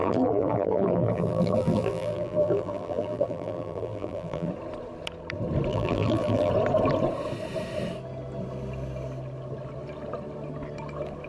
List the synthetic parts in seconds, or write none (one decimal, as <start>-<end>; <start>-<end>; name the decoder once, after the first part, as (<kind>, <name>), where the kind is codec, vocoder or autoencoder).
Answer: 0.0-4.5 (vocoder, BigVGAN v2); 5.7-6.5